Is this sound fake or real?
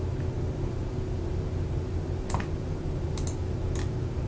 real